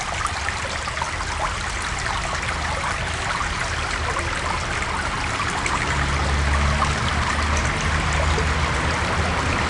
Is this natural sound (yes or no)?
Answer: yes